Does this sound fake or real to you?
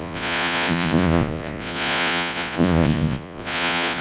fake